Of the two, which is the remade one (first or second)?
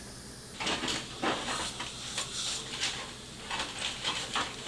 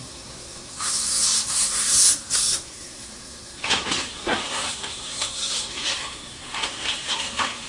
second